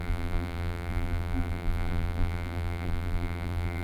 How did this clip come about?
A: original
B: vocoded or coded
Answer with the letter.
B